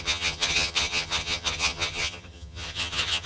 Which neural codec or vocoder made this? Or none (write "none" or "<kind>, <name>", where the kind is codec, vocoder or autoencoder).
vocoder, HiFi-GAN